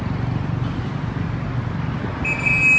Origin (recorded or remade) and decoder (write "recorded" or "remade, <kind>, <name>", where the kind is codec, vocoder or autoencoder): recorded